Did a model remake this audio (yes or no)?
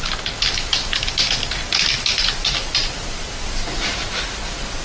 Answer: no